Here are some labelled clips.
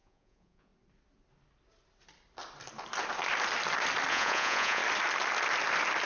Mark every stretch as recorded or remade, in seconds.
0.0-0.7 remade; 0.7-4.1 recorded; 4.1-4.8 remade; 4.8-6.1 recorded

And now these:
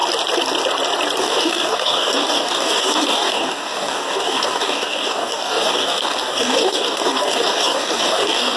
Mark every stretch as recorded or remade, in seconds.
0.0-1.2 recorded; 1.2-8.6 remade

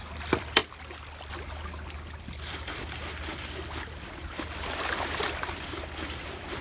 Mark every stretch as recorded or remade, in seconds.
0.0-6.6 recorded

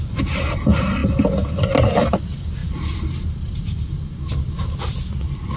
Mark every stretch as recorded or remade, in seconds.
0.0-2.6 recorded; 2.6-4.3 remade; 4.3-5.6 recorded

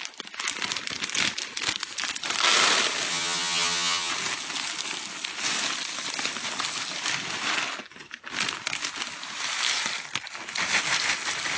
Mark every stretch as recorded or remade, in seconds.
0.0-3.1 recorded; 3.1-4.1 remade; 4.1-11.6 recorded

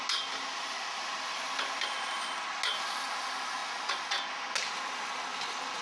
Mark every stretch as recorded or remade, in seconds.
0.0-5.3 recorded; 5.3-5.8 remade